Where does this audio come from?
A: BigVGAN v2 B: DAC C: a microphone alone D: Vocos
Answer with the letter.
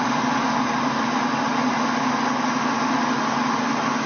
C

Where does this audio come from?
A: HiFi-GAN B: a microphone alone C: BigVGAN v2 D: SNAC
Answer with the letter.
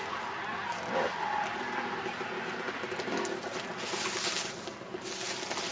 B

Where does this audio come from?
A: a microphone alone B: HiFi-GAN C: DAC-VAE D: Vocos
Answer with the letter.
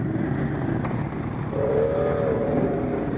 A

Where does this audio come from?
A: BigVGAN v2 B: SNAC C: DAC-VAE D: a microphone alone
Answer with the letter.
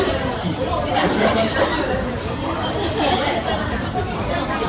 A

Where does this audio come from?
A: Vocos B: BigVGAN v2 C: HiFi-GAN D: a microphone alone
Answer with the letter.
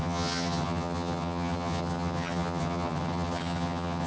C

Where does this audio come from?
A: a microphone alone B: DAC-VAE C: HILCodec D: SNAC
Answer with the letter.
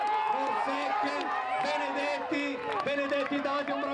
A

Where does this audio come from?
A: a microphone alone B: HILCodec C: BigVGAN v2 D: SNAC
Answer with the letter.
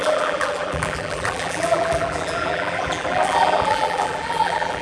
C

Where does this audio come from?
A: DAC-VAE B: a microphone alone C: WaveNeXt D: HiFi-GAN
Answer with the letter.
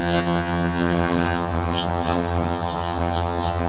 D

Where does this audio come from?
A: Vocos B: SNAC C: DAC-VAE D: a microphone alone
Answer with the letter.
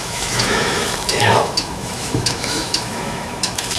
C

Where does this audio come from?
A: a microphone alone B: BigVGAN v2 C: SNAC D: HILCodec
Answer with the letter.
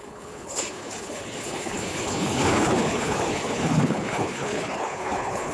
D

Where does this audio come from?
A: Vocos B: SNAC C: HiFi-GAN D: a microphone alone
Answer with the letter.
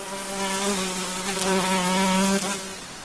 D